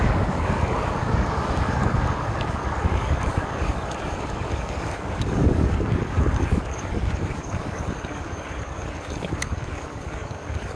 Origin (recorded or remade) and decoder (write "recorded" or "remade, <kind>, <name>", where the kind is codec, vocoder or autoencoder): remade, codec, DAC